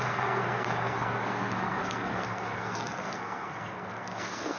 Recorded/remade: remade